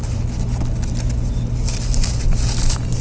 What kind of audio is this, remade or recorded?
recorded